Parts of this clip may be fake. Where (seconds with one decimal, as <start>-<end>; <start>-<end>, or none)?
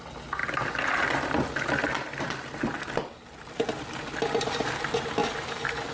none